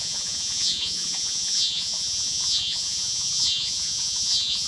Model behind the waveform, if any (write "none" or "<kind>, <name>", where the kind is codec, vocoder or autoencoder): vocoder, Vocos